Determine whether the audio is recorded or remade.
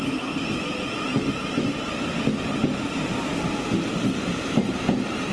recorded